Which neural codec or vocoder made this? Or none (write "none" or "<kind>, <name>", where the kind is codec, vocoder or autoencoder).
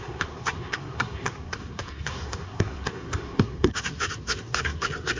codec, SNAC